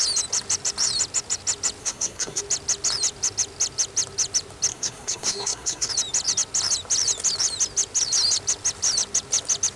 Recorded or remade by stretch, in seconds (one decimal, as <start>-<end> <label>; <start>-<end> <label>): 0.0-1.8 recorded; 1.8-2.4 remade; 2.4-4.7 recorded; 4.7-5.9 remade; 5.9-9.8 recorded

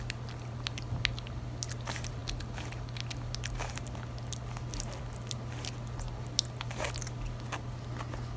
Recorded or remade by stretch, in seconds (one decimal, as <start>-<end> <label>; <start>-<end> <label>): 0.0-8.4 recorded